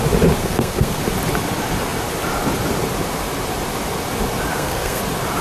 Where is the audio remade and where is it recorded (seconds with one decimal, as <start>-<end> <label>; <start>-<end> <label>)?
0.0-0.4 recorded; 0.4-1.0 remade; 1.0-4.5 recorded; 4.5-5.0 remade; 5.0-5.4 recorded